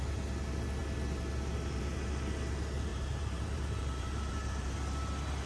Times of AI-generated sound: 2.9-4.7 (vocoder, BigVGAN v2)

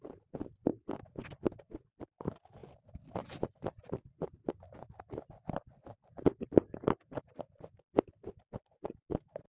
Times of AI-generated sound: none

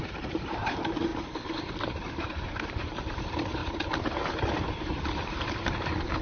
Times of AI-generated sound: 0.0-1.1 (vocoder, BigVGAN v2); 2.2-3.6; 4.1-6.2

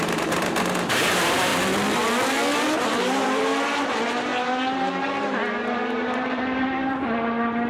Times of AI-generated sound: 0.0-1.5 (vocoder, BigVGAN v2); 2.8-7.7

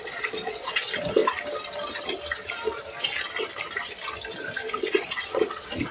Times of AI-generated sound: 0.0-1.2 (vocoder, Vocos); 4.7-5.9

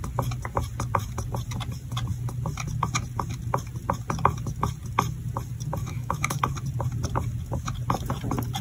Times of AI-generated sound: 5.8-6.4 (autoencoder, DAC-VAE)